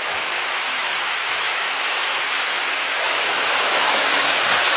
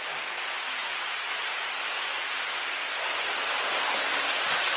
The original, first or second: second